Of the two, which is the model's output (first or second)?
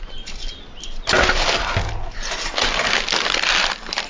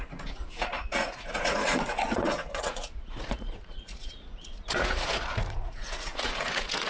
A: second